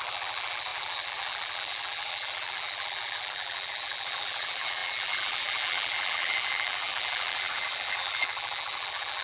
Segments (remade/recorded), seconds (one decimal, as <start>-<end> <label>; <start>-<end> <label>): 0.0-9.2 remade